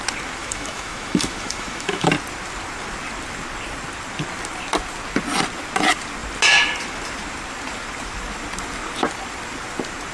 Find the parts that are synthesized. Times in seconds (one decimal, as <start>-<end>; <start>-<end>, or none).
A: 0.4-2.1